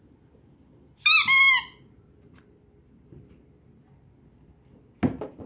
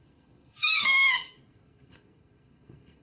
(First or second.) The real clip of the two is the first